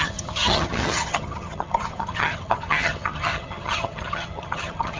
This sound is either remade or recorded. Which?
remade